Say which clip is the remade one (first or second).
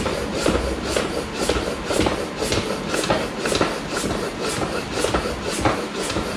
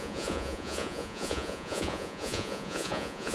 second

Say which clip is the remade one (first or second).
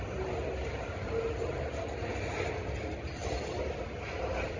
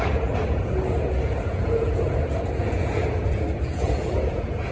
second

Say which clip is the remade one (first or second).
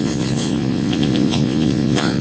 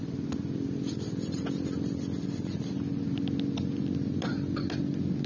first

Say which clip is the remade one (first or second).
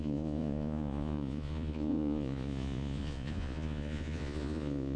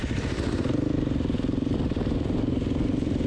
first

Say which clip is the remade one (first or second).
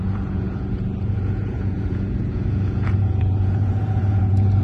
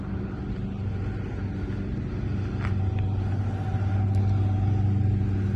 first